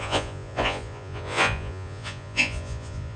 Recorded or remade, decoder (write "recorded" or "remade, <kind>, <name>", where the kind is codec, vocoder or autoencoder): remade, vocoder, Vocos